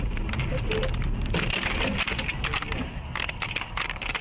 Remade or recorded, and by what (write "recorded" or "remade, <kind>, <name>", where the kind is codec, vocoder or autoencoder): recorded